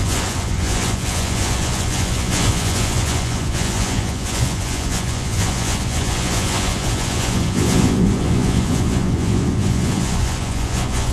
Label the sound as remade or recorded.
remade